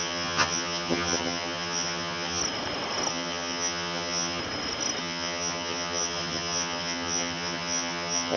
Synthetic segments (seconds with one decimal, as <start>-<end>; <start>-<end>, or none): 0.0-2.4; 3.1-4.4; 5.0-8.4